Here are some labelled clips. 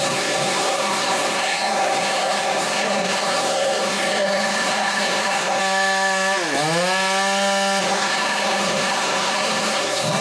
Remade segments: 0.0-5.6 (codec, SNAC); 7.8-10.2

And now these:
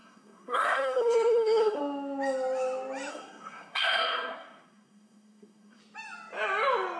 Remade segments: 0.0-1.8 (codec, SNAC); 3.1-5.8

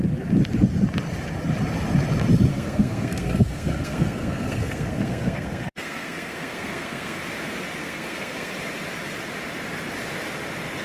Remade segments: 2.5-7.2 (codec, SNAC); 7.8-8.5

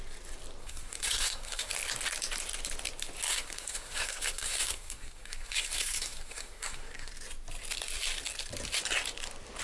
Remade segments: 0.6-1.7 (codec, SNAC); 3.3-7.1

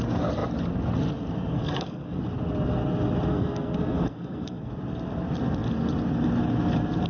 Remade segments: 1.5-2.2 (codec, SNAC); 3.3-4.7

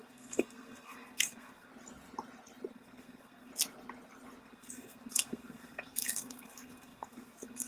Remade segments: 0.0-1.7 (codec, SNAC); 2.7-3.5; 4.4-7.7